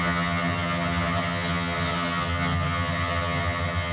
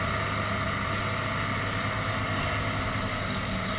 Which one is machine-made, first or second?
first